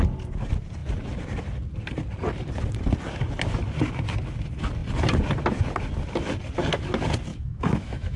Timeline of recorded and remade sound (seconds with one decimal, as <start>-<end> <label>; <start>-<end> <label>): 0.0-7.3 recorded; 7.3-8.2 remade